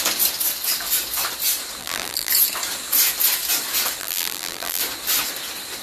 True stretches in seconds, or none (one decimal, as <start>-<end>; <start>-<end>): 0.0-1.8; 2.3-4.0; 4.8-5.8